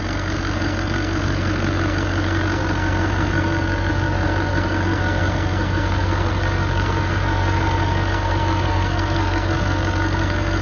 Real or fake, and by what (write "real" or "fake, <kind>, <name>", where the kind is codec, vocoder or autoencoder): fake, codec, SNAC